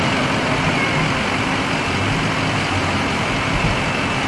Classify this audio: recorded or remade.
recorded